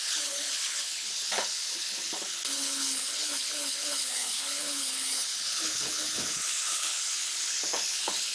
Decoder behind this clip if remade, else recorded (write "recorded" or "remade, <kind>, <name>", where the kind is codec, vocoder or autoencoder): remade, codec, HILCodec